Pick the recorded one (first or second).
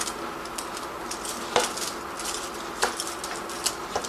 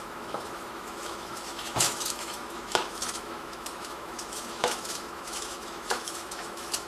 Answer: first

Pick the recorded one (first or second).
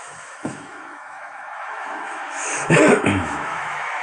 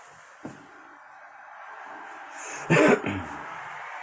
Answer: second